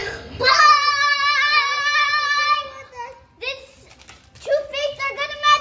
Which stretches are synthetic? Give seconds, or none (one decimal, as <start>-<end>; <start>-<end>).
0.0-0.6